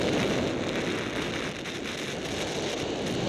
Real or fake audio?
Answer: real